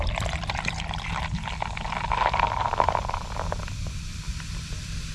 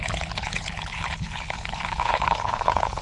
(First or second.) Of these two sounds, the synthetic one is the second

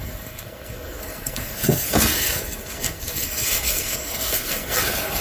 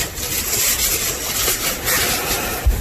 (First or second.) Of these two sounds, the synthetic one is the first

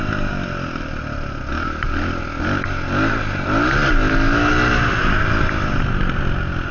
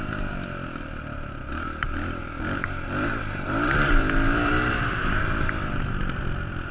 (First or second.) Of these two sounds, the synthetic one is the second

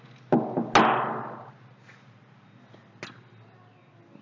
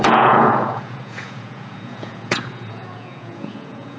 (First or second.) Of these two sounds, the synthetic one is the second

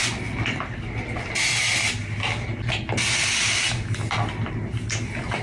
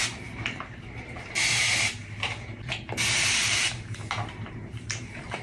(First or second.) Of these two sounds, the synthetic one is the second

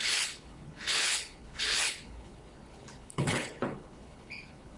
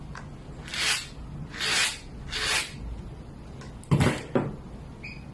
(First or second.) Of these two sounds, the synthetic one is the first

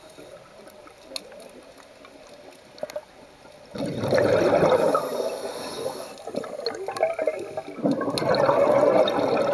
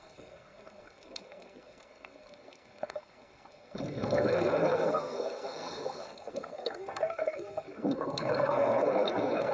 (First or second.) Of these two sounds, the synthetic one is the second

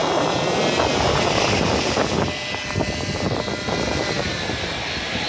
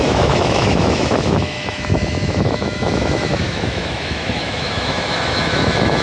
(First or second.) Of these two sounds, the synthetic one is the second